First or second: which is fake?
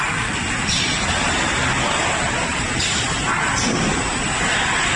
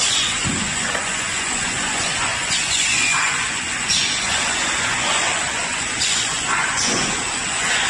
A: second